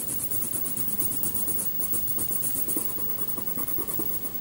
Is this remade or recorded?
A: recorded